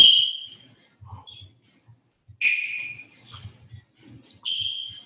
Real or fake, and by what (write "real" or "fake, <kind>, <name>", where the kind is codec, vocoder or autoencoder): real